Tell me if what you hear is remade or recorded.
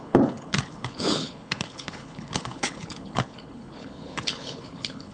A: remade